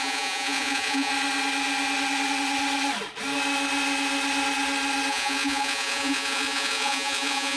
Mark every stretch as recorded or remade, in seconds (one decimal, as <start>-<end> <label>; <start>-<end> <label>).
0.0-1.1 remade; 1.1-5.1 recorded; 5.1-7.6 remade